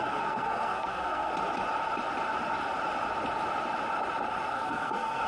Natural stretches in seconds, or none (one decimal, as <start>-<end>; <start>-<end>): 1.3-4.5